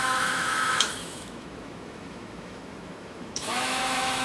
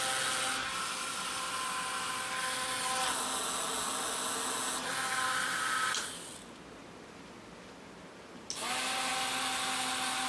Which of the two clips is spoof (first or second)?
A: first